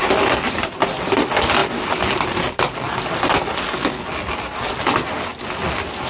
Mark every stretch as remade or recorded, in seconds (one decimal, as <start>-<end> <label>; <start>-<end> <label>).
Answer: 0.0-6.1 recorded